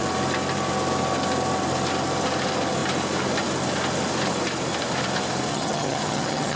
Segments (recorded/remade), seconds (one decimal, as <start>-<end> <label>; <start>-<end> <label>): 0.0-5.5 recorded; 5.5-6.6 remade